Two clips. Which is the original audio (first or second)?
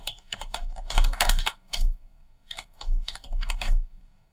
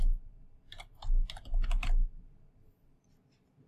second